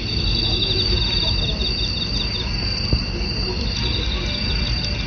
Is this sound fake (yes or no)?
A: no